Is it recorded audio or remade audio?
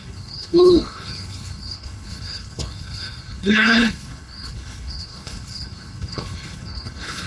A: remade